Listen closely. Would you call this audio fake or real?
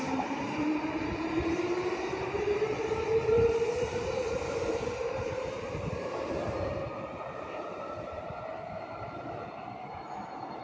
fake